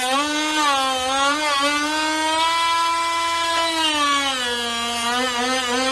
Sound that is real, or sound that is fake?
real